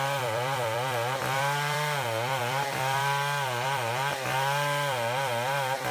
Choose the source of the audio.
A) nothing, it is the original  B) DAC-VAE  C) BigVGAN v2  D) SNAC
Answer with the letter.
C